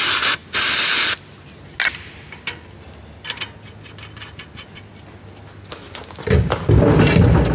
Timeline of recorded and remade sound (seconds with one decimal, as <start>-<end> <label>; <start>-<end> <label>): 0.0-7.5 recorded